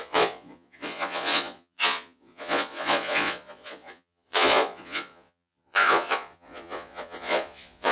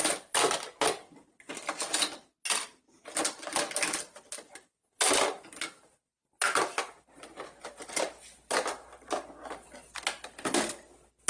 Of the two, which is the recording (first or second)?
second